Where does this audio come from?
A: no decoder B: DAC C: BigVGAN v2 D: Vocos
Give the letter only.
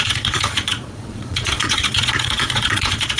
D